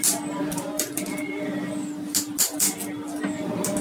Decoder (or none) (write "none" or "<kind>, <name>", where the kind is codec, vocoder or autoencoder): none